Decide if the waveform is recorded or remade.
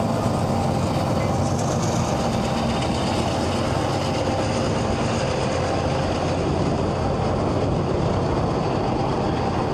recorded